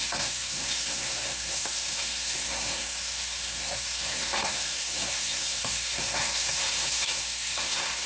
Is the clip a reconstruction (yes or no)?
yes